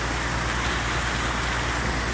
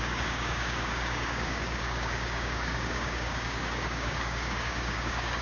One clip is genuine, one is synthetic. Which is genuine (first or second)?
first